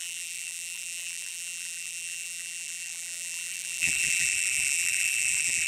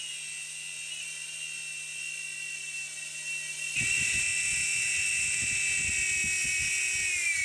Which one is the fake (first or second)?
first